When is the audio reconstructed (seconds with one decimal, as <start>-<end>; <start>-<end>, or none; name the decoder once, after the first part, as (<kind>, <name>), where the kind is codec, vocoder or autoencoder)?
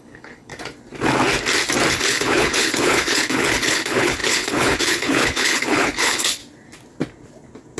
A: 0.0-0.5 (codec, HILCodec); 1.9-6.4